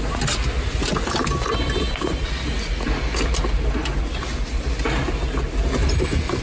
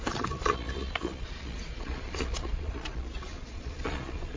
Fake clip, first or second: second